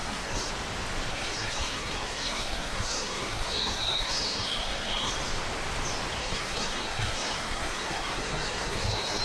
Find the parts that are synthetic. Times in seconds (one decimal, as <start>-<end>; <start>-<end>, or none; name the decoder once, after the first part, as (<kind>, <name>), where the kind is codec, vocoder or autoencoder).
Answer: 0.0-0.5 (codec, SNAC); 1.1-5.1; 6.2-9.2

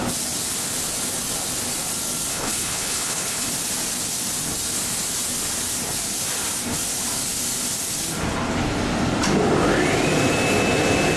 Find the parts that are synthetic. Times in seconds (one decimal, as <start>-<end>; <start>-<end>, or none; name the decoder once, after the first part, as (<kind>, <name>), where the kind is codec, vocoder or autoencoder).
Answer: 2.3-3.5 (codec, HILCodec)

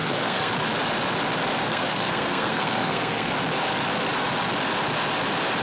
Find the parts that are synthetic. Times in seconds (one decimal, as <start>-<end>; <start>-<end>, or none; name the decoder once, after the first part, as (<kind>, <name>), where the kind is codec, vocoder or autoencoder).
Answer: 0.0-0.5 (codec, SNAC); 1.7-3.3